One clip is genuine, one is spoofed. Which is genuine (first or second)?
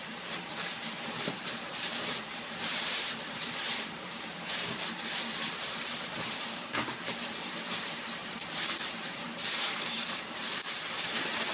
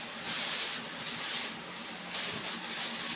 second